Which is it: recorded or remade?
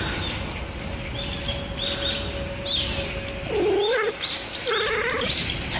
recorded